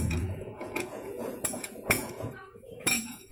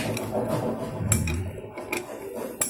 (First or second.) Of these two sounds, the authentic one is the second